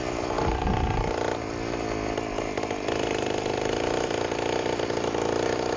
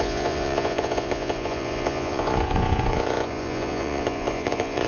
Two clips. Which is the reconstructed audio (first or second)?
second